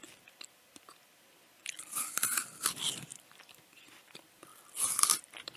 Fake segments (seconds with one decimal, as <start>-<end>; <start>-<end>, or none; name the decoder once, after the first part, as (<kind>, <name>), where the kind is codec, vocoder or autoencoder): 1.6-4.5 (vocoder, BigVGAN v2)